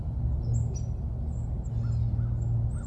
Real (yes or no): yes